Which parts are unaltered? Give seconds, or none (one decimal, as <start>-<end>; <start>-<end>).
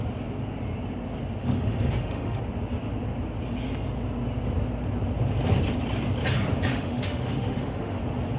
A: 0.0-1.4; 2.4-6.7; 8.0-8.4